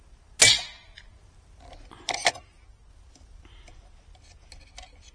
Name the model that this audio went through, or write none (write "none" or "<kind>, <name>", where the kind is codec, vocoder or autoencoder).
none